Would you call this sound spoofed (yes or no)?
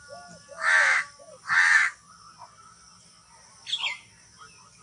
no